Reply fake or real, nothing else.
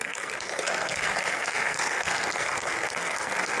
fake